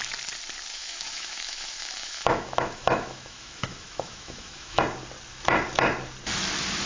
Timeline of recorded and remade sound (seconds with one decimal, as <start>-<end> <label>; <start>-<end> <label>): 0.0-0.7 recorded; 0.7-4.8 remade; 4.8-6.9 recorded